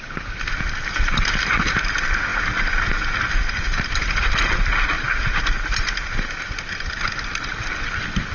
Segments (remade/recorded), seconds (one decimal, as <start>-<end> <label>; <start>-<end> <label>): 0.0-8.3 recorded